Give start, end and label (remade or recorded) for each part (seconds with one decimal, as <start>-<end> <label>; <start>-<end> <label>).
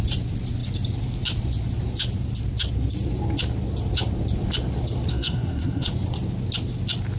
0.0-5.1 recorded; 5.1-5.9 remade; 5.9-7.2 recorded